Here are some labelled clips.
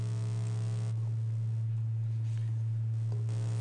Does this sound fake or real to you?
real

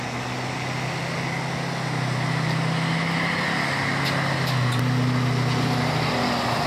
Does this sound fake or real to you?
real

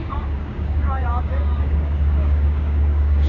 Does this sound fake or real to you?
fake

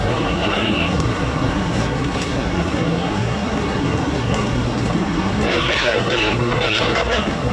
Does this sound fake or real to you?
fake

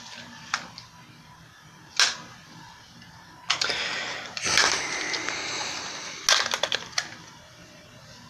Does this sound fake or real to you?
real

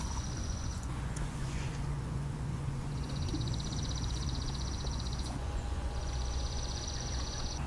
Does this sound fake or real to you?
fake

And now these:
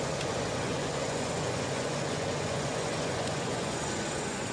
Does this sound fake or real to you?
fake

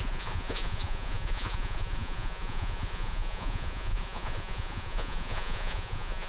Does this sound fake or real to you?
fake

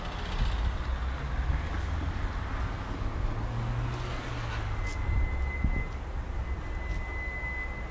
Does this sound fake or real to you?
real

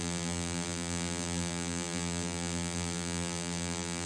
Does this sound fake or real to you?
fake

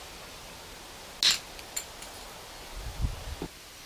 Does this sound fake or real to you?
real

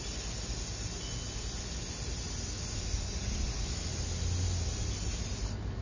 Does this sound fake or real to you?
real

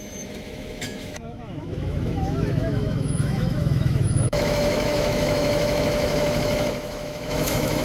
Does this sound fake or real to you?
fake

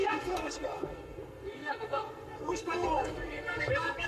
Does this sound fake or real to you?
fake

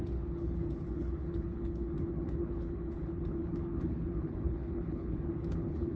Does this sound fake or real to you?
fake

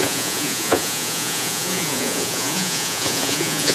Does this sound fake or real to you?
fake